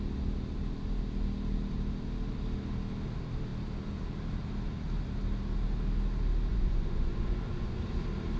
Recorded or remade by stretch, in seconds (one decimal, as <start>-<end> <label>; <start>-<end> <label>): 0.0-6.5 recorded; 6.5-7.8 remade; 7.8-8.4 recorded